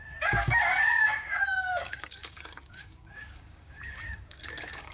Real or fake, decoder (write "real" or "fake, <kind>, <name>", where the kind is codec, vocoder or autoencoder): fake, codec, DAC